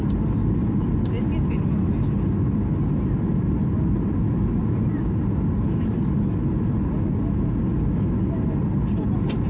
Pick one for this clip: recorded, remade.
recorded